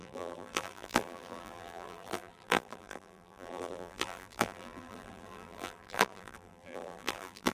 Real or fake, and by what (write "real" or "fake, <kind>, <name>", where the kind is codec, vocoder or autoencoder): fake, vocoder, BigVGAN v2